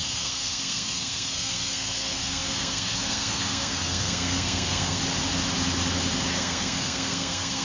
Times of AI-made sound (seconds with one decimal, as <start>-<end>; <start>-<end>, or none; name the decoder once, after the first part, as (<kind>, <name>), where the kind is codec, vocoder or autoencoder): 0.0-5.0 (codec, SNAC); 6.3-7.6